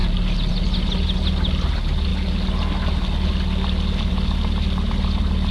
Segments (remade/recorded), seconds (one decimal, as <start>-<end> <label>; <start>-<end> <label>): 0.0-5.5 recorded

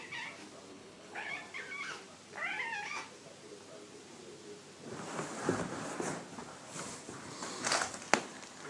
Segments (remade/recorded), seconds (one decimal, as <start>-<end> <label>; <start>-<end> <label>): 0.0-0.7 recorded; 0.7-1.3 remade; 1.3-8.7 recorded

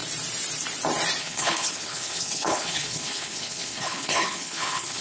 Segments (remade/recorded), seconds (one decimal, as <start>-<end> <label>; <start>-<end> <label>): 0.0-1.2 recorded; 1.2-5.0 remade

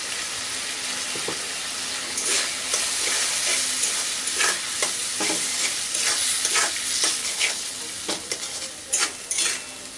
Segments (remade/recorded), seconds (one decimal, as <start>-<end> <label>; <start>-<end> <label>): 0.0-2.0 recorded; 2.0-2.5 remade; 2.5-7.2 recorded; 7.2-7.8 remade; 7.8-10.0 recorded

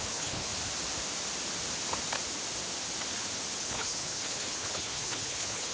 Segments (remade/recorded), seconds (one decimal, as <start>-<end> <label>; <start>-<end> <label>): 0.0-0.5 remade; 0.5-3.6 recorded; 3.6-5.7 remade

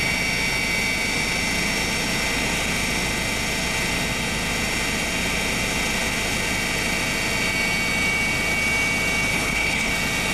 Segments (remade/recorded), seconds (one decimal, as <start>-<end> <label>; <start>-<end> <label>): 0.0-9.3 recorded; 9.3-9.9 remade; 9.9-10.3 recorded

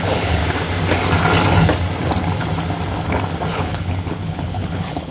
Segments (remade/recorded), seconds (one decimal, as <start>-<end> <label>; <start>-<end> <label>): 0.0-0.4 remade; 0.4-3.5 recorded; 3.5-5.1 remade